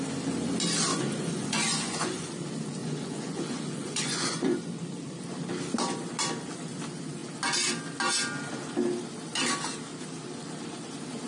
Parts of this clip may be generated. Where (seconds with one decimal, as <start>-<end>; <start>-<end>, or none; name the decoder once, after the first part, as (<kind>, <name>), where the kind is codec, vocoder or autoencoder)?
0.9-2.3 (vocoder, Vocos); 2.8-4.6